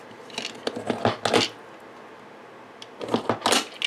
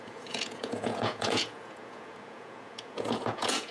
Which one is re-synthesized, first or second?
second